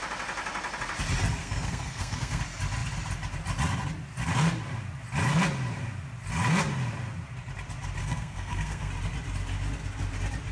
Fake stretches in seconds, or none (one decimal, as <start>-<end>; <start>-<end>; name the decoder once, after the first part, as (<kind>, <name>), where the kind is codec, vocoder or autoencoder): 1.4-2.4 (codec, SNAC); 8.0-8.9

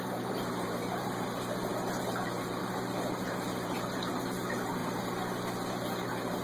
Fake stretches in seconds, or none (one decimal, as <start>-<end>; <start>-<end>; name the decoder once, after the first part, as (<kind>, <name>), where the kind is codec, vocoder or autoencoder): 0.0-4.8 (vocoder, BigVGAN v2); 5.7-6.4

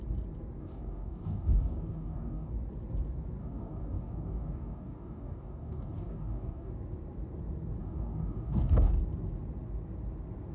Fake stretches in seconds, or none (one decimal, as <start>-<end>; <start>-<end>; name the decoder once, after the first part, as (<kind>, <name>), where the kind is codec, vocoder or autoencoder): 0.6-2.5 (codec, DAC); 3.4-6.7; 7.8-8.9

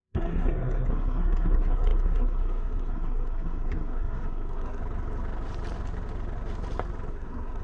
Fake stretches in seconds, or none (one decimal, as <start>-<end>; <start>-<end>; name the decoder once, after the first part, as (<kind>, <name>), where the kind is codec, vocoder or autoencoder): 0.0-4.8 (codec, SNAC); 7.1-7.6

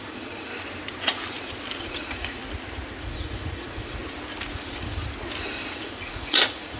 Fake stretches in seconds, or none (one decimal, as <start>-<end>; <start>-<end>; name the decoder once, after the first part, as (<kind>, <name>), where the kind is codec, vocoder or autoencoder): 0.0-0.5 (vocoder, Vocos); 1.8-2.4; 3.0-4.0; 4.5-5.0; 5.7-6.8

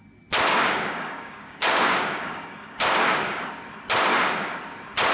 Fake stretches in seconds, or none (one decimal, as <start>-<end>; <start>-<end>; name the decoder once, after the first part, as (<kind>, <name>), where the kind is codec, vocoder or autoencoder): 0.5-3.5 (codec, DAC); 4.1-4.6

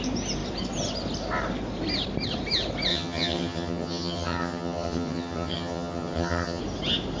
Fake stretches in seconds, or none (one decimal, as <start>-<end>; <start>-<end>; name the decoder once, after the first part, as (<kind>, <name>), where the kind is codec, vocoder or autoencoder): 2.9-6.6 (vocoder, HiFi-GAN)